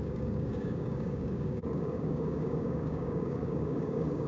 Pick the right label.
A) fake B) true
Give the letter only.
A